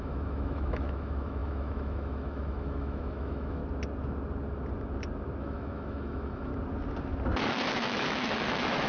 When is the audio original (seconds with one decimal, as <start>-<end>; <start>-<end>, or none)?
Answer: 3.6-5.4; 6.5-7.4